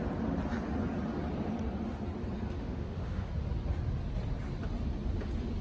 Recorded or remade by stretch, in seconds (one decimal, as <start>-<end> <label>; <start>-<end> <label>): 0.0-2.6 recorded; 2.6-3.3 remade; 3.3-5.6 recorded